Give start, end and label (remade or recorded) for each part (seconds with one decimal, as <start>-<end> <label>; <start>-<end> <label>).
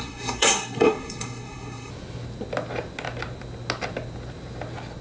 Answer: 0.0-1.9 remade; 1.9-5.0 recorded